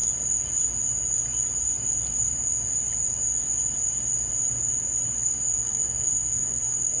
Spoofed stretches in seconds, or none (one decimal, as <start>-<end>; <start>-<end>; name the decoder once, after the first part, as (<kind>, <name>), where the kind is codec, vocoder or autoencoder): 5.6-7.0 (codec, SNAC)